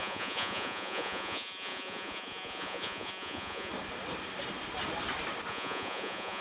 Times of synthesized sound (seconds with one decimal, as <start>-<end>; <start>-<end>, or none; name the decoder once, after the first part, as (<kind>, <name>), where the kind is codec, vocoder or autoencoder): 0.0-3.7 (vocoder, Vocos); 5.5-6.4